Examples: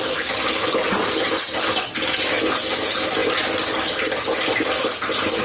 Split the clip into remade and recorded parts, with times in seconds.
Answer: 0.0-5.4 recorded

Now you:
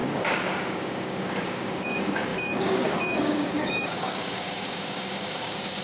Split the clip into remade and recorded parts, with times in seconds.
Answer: 0.0-5.8 remade